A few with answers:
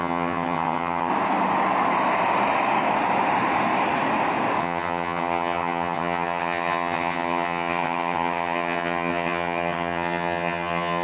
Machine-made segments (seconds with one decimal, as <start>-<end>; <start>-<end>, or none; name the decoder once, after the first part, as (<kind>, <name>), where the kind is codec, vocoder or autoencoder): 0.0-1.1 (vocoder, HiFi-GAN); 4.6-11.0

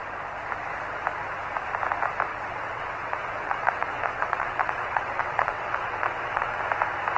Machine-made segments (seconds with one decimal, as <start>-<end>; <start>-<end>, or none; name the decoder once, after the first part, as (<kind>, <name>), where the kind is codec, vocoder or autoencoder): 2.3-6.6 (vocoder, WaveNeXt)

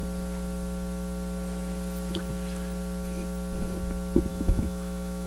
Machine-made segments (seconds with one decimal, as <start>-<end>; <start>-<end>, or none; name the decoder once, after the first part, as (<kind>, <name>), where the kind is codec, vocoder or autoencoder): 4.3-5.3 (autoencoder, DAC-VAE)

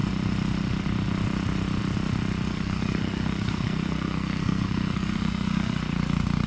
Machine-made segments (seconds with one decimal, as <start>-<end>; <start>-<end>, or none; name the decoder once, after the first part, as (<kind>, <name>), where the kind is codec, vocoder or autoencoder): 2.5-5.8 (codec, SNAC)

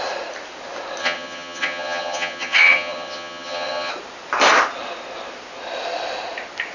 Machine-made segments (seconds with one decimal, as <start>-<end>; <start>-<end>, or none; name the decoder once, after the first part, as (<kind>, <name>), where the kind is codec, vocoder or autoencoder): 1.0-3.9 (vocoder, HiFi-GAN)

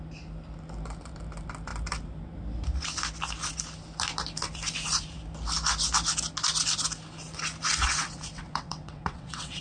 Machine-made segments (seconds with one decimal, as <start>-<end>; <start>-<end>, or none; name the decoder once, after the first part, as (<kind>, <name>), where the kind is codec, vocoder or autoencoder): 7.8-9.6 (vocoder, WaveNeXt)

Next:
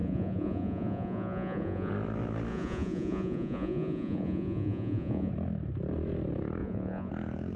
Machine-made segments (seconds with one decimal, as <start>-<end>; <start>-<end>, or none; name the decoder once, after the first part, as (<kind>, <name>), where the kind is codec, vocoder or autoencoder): 0.0-1.9 (vocoder, Vocos); 2.5-5.3; 6.6-7.1